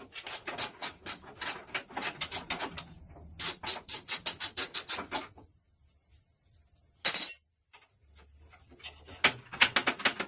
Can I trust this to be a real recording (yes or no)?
yes